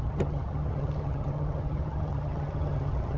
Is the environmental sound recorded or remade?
remade